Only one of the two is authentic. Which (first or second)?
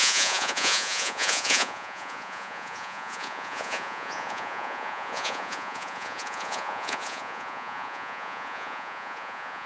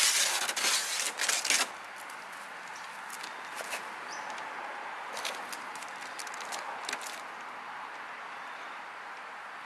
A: second